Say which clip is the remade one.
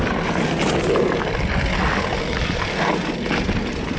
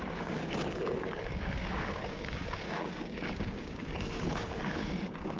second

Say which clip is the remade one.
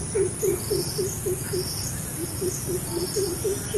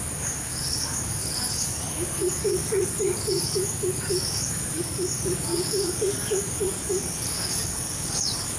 second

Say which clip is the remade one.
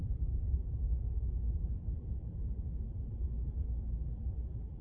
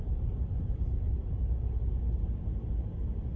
first